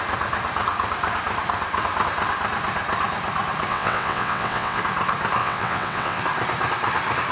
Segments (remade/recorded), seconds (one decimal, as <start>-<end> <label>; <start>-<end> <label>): 0.0-3.7 recorded; 3.7-4.8 remade; 4.8-5.4 recorded; 5.4-6.2 remade; 6.2-7.3 recorded